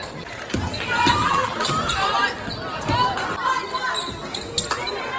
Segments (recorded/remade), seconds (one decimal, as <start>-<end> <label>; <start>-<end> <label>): 0.0-1.2 recorded; 1.2-1.7 remade; 1.7-5.2 recorded